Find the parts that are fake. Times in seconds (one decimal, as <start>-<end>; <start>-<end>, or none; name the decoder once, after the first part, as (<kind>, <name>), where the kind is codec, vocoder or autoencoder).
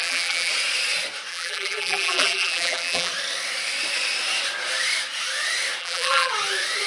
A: 0.0-0.5 (vocoder, BigVGAN v2); 1.3-3.1; 5.8-6.3